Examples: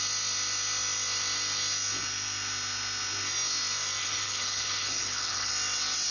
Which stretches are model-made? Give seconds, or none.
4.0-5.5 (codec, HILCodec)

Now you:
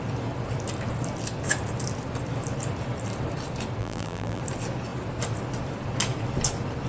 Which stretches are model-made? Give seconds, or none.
3.8-4.4 (vocoder, BigVGAN v2)